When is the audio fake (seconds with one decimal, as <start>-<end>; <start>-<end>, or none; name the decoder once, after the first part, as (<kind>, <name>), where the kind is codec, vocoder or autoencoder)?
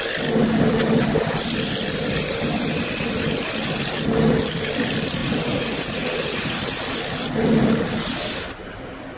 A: 5.2-6.6 (vocoder, Vocos)